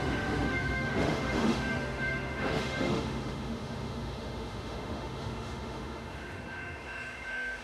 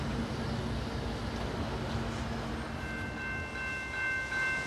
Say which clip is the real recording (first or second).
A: second